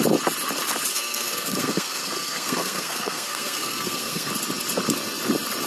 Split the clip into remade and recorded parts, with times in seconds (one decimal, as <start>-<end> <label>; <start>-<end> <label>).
0.0-0.9 recorded; 0.9-4.3 remade; 4.3-5.7 recorded